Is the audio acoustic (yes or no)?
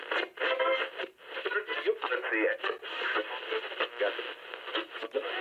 yes